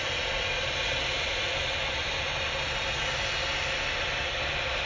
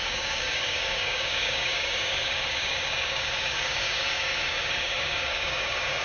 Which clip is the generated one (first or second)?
second